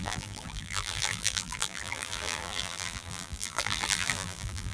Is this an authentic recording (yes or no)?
no